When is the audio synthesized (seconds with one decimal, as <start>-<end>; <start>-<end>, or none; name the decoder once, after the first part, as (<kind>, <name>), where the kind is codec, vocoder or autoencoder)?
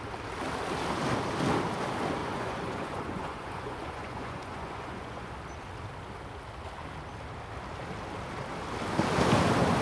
2.2-5.3 (vocoder, Vocos)